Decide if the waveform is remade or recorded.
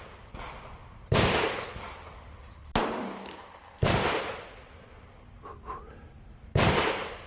recorded